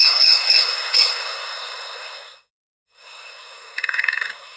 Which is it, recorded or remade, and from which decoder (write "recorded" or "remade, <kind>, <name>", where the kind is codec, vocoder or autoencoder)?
remade, codec, SNAC